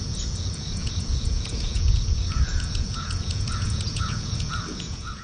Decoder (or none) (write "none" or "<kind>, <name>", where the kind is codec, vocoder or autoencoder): vocoder, Vocos